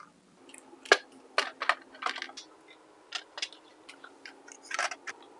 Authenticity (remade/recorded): recorded